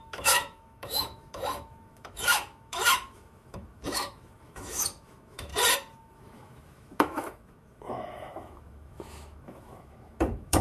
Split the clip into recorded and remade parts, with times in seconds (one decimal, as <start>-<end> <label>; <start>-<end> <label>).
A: 0.0-5.5 remade; 5.5-6.0 recorded; 6.0-10.6 remade